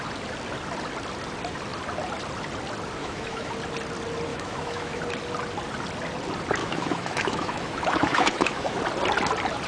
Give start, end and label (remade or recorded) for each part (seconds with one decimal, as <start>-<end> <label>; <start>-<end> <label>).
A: 0.0-3.0 recorded; 3.0-3.5 remade; 3.5-4.3 recorded; 4.3-5.0 remade; 5.0-6.6 recorded; 6.6-8.8 remade; 8.8-9.7 recorded